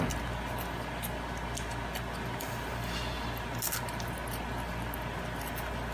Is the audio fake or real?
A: real